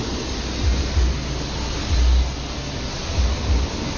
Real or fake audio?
real